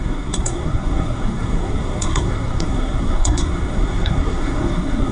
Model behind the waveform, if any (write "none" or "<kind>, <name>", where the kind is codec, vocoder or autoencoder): codec, SNAC